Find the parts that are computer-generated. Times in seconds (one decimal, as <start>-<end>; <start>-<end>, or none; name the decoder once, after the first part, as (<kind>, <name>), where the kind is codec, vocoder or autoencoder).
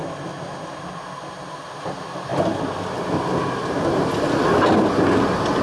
none